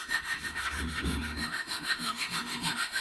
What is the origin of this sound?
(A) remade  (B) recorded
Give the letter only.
A